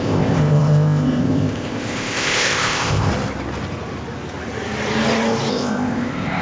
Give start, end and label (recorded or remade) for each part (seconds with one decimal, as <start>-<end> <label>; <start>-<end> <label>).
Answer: 0.0-3.1 remade; 3.1-5.5 recorded; 5.5-6.4 remade